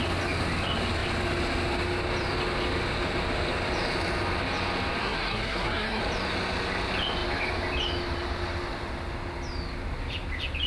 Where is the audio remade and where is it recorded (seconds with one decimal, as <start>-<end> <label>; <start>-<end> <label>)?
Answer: 0.0-5.0 recorded; 5.0-6.0 remade; 6.0-10.7 recorded